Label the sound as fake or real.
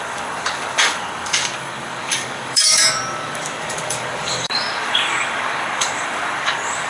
fake